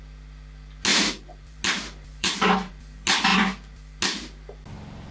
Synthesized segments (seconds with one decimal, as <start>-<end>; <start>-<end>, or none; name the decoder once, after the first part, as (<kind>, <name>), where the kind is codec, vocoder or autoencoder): 0.9-1.6 (vocoder, BigVGAN v2); 2.1-2.7